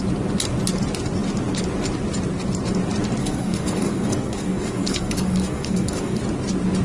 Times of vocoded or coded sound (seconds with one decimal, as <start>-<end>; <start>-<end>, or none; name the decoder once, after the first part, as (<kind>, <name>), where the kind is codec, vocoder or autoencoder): 3.2-6.2 (codec, SNAC)